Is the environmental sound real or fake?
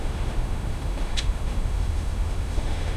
fake